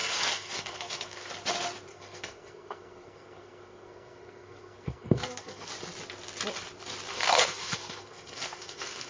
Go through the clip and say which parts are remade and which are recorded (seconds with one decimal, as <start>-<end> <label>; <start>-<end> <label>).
0.0-1.3 remade; 1.3-1.9 recorded; 1.9-5.7 remade; 5.7-7.1 recorded; 7.1-9.1 remade